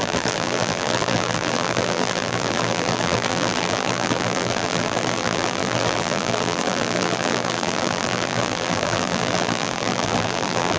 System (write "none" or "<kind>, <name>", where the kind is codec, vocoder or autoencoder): vocoder, BigVGAN v2